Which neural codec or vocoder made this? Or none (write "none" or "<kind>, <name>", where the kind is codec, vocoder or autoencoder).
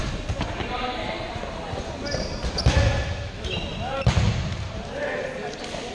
none